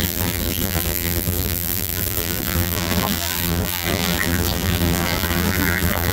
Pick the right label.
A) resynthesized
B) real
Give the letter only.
A